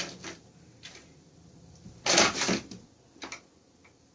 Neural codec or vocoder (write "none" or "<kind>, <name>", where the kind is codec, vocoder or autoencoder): none